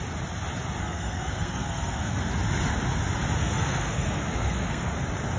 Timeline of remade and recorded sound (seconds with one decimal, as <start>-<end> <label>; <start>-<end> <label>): 0.0-0.8 recorded; 0.8-2.3 remade; 2.3-3.4 recorded; 3.4-4.9 remade; 4.9-5.4 recorded